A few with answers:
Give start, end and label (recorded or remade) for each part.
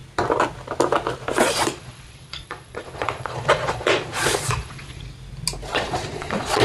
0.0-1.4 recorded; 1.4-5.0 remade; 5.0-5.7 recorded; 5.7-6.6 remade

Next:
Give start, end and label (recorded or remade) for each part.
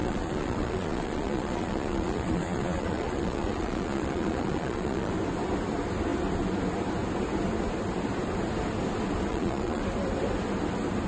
0.0-5.1 remade; 5.1-9.3 recorded; 9.3-9.8 remade; 9.8-11.1 recorded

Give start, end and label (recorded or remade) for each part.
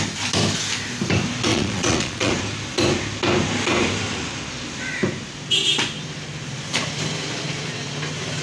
0.0-1.5 recorded; 1.5-2.3 remade; 2.3-8.4 recorded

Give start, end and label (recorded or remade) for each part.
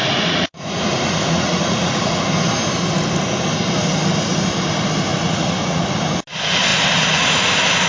0.0-2.2 remade; 2.2-5.1 recorded; 5.1-6.0 remade; 6.0-7.9 recorded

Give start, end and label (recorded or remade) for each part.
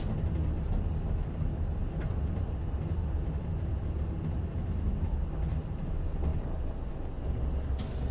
0.0-8.1 recorded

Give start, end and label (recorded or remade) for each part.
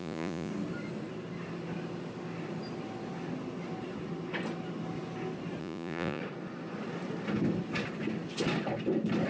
0.0-0.5 remade; 0.5-5.6 recorded; 5.6-6.2 remade; 6.2-9.3 recorded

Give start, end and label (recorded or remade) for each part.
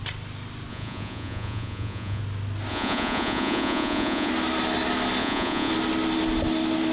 0.0-0.7 recorded; 0.7-2.2 remade; 2.2-2.7 recorded; 2.7-4.3 remade; 4.3-5.2 recorded; 5.2-5.7 remade; 5.7-6.9 recorded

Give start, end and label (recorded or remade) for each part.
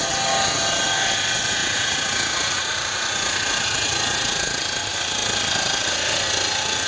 0.0-1.6 recorded; 1.6-4.6 remade; 4.6-6.9 recorded